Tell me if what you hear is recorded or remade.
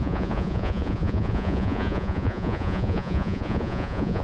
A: remade